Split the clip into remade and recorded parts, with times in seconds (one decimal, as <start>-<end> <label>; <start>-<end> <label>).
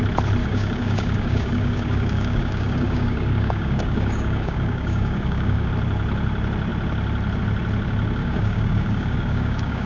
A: 0.0-0.4 recorded; 0.4-5.7 remade; 5.7-8.2 recorded; 8.2-9.9 remade